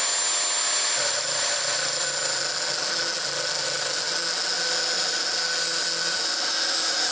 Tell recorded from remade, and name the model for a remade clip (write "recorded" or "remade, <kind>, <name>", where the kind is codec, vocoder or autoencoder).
recorded